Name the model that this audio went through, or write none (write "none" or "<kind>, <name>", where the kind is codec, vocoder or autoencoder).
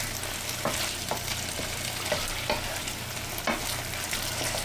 none